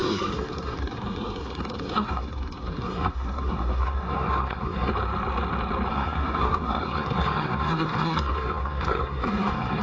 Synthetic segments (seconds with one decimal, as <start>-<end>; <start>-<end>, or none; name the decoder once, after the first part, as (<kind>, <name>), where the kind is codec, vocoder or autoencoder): 0.0-4.9 (codec, SNAC); 5.9-9.8